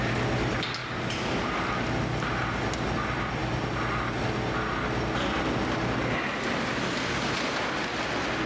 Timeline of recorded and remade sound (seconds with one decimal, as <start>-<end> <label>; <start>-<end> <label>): 0.0-8.5 recorded